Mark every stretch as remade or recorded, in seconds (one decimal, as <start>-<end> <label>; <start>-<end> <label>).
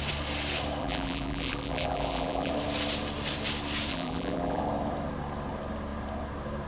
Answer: 0.0-0.8 recorded; 0.8-2.5 remade; 2.5-3.9 recorded; 3.9-4.6 remade; 4.6-6.7 recorded